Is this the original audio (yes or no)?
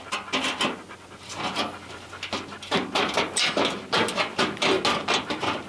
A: yes